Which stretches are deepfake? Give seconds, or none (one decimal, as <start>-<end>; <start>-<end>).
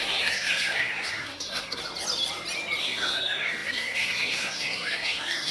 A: 0.0-1.8; 2.8-5.5